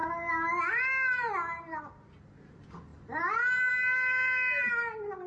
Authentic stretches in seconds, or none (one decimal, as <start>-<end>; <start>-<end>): 0.0-5.3

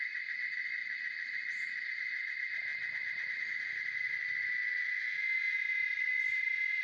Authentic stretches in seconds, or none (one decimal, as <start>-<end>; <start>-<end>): 0.0-6.8

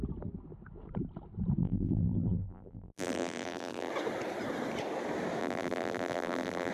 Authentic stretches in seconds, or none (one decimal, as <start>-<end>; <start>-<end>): 0.0-1.6; 3.9-5.4

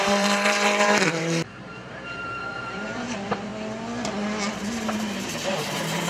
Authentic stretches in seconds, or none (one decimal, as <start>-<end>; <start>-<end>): 3.5-4.6

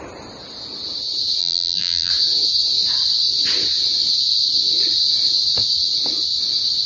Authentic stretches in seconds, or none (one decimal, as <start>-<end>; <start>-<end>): 0.0-1.4; 2.1-6.9

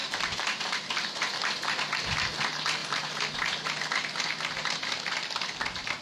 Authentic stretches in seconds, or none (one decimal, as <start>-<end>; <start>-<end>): 1.4-6.0

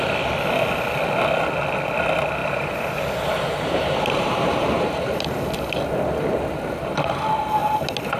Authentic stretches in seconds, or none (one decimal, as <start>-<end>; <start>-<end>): 0.0-2.4; 5.7-8.2